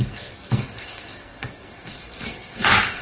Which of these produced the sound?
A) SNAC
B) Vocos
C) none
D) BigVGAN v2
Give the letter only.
A